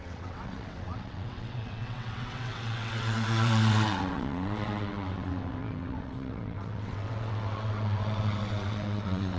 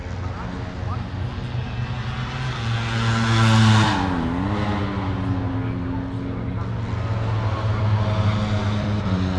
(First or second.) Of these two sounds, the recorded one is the second